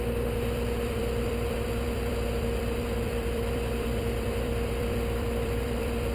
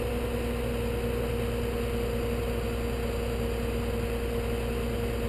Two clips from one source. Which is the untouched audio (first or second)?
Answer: second